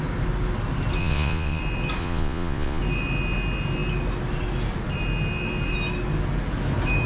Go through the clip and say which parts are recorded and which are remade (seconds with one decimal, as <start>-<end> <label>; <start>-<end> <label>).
0.0-1.0 recorded; 1.0-1.6 remade; 1.6-2.0 recorded; 2.0-2.8 remade; 2.8-7.1 recorded